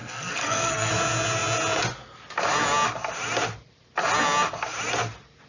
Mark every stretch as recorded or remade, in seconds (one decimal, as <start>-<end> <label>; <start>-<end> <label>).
0.0-0.9 remade; 0.9-5.5 recorded